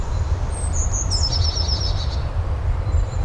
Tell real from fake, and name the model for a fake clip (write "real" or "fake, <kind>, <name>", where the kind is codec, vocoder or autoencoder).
fake, vocoder, BigVGAN v2